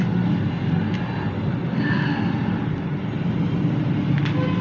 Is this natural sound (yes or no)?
yes